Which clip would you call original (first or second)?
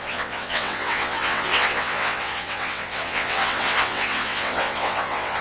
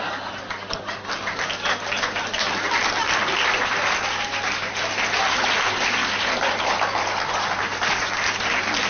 second